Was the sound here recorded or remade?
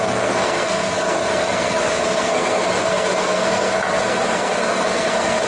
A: remade